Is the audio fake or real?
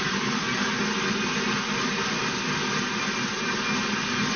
real